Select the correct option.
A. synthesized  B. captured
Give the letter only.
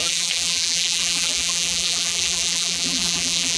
A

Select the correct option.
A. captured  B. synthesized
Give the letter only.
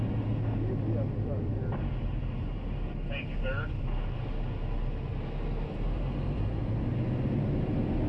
A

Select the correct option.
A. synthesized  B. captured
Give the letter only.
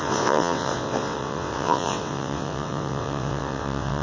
A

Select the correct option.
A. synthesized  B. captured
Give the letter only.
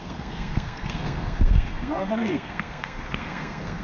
A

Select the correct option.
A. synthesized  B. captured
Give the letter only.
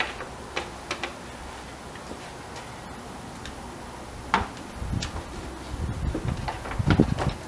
B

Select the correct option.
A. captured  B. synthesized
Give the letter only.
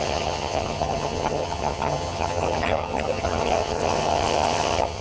B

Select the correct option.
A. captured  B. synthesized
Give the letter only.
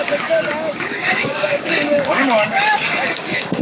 B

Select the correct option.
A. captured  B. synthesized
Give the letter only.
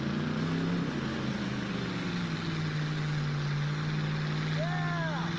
A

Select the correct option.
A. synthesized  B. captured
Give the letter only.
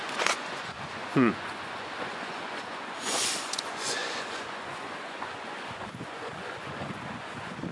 A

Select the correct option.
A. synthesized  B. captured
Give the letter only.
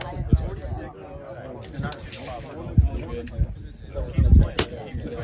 B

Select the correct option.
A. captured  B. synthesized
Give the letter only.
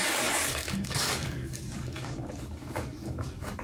B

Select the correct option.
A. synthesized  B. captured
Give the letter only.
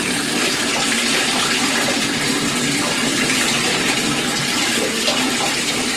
A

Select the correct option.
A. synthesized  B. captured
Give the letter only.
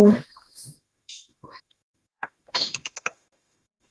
A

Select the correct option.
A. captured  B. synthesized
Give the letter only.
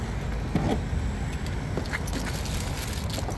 A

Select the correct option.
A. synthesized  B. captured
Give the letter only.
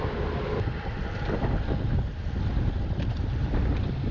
B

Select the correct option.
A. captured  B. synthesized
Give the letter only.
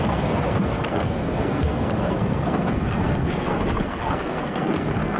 B